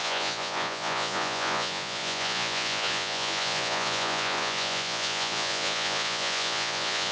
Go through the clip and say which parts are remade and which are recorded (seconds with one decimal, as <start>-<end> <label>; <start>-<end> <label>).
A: 0.0-7.1 remade